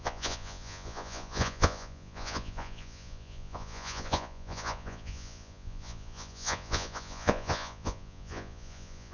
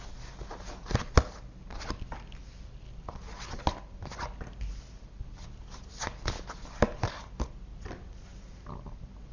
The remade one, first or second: first